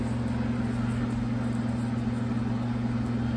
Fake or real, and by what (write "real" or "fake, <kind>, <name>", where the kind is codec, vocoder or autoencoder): real